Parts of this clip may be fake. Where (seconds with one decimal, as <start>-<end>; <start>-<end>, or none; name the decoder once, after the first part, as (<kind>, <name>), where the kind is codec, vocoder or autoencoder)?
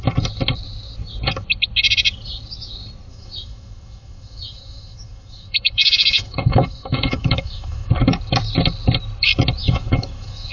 3.1-7.9 (autoencoder, DAC-VAE); 9.6-10.5